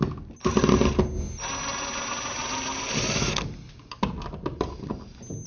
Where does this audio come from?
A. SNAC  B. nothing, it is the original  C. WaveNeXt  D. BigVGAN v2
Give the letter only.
B